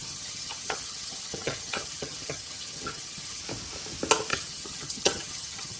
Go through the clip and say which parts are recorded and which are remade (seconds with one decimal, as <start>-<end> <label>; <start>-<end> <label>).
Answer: 0.0-3.4 remade; 3.4-4.3 recorded; 4.3-5.8 remade